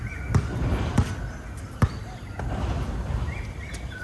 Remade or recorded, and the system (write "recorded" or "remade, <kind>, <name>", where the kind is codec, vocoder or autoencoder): recorded